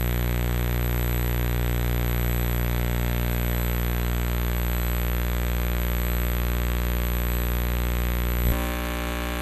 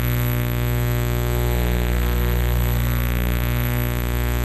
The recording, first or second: first